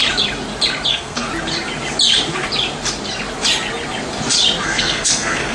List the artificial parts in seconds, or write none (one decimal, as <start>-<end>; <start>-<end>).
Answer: 0.9-1.3; 4.6-5.5